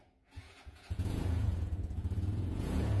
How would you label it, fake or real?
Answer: fake